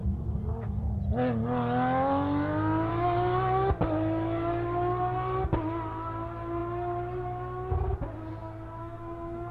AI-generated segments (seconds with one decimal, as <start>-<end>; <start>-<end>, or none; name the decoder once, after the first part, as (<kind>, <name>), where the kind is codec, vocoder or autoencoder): 8.8-9.5 (codec, SNAC)